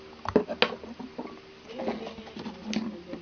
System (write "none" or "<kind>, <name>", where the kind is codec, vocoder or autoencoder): none